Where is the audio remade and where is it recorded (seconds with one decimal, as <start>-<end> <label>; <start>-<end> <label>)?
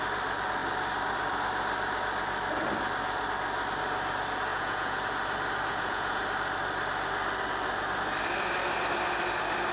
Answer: 0.0-4.5 recorded; 4.5-5.0 remade; 5.0-5.7 recorded; 5.7-6.2 remade; 6.2-9.7 recorded